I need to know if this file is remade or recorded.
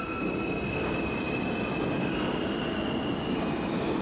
recorded